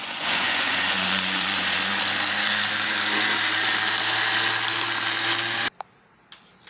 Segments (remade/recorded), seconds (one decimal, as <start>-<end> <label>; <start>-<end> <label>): 0.0-2.0 remade; 2.0-6.7 recorded